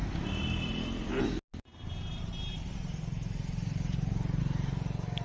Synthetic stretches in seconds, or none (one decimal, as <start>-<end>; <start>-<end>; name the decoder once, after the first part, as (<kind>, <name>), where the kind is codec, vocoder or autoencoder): 0.0-1.2 (vocoder, BigVGAN v2); 1.7-4.4